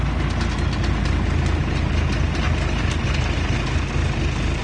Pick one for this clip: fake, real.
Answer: real